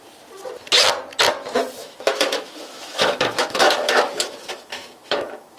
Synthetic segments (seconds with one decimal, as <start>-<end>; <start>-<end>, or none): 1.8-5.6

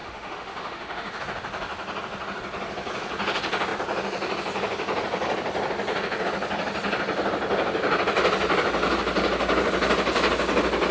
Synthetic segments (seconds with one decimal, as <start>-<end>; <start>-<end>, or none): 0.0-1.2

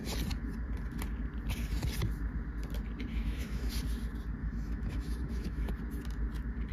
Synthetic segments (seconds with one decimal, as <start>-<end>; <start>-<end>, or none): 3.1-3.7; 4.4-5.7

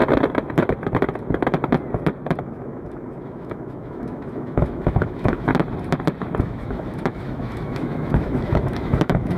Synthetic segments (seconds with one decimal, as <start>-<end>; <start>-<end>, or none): 2.4-5.5; 6.4-9.4

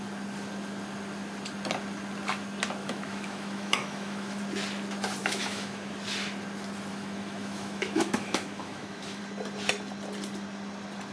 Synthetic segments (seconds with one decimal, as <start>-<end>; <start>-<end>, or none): 2.8-4.4; 5.2-5.9; 6.9-9.2

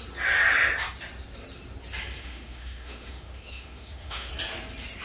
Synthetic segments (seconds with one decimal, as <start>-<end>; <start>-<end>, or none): 2.2-4.3